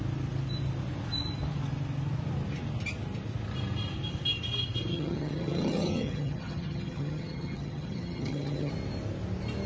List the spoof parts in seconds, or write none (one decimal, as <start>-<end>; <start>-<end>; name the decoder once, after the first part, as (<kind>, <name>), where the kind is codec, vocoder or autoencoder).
4.9-8.7 (vocoder, HiFi-GAN)